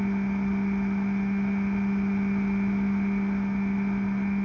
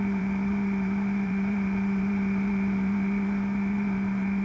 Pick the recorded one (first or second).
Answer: first